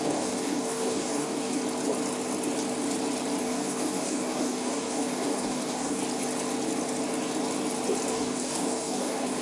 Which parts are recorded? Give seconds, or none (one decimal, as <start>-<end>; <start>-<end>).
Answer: 1.6-3.4; 6.0-8.1